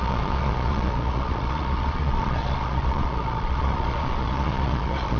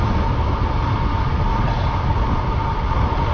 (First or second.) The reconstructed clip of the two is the first